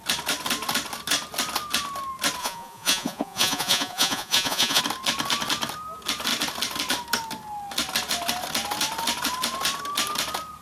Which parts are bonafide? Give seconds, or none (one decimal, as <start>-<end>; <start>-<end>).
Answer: 0.0-2.4; 4.8-10.6